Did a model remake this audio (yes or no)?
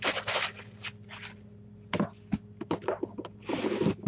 no